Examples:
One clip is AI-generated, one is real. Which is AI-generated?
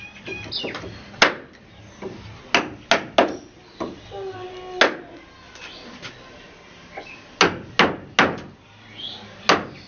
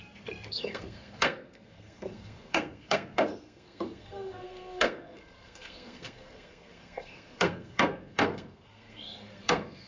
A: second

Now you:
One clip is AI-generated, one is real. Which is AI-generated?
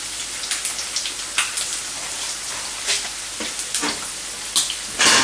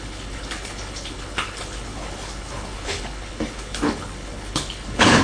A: second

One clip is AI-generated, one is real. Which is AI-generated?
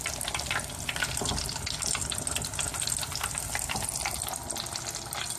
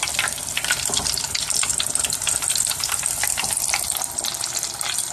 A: second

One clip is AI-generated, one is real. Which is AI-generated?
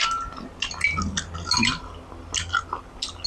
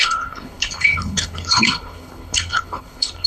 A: second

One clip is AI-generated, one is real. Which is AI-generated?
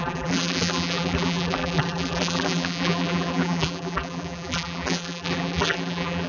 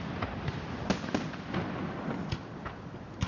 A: first